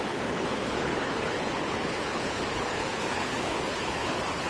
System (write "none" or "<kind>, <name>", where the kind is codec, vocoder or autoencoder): codec, HILCodec